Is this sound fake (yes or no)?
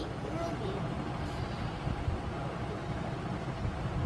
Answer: no